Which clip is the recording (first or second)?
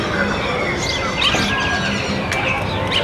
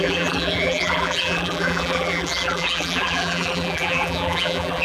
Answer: first